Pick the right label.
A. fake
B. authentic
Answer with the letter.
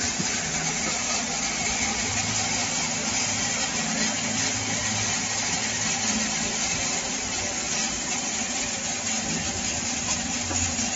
B